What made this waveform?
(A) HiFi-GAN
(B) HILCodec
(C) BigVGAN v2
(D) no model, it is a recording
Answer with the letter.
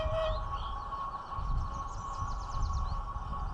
D